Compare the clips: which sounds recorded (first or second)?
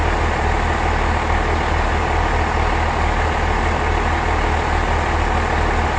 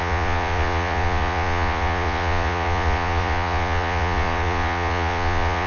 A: first